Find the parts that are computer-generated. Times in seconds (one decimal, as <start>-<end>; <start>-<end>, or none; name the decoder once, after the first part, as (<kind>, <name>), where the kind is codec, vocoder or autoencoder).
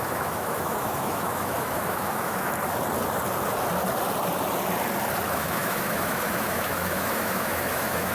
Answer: 0.0-2.5 (autoencoder, DAC-VAE); 5.3-8.1